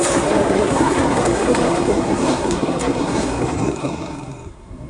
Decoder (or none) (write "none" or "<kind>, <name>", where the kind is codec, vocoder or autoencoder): codec, SNAC